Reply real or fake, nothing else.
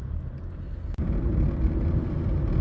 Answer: real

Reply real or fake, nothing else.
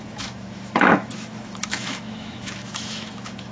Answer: fake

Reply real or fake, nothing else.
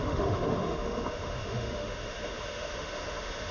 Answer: fake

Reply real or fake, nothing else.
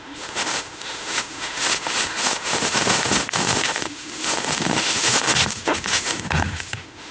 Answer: fake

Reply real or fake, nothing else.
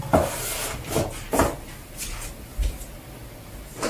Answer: real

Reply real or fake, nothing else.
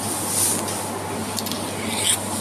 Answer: real